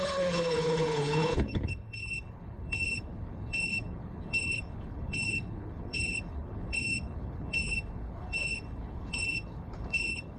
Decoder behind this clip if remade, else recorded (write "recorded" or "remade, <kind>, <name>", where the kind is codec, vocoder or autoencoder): remade, codec, HILCodec